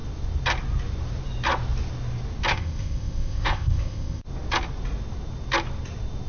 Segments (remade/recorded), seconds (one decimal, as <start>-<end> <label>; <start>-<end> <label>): 0.0-2.5 recorded; 2.5-4.2 remade; 4.2-6.3 recorded